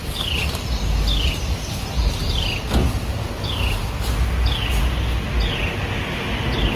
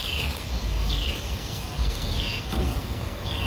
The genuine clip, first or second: first